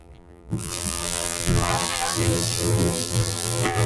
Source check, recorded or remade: remade